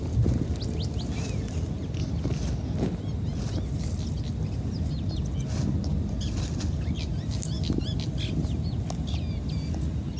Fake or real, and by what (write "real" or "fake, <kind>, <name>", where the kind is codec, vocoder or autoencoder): real